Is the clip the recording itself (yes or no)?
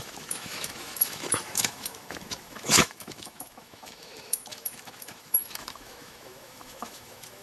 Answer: no